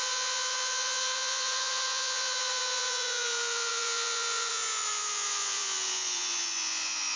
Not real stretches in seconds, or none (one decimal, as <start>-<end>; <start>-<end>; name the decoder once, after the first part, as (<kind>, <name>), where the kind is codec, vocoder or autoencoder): 0.0-7.2 (vocoder, Vocos)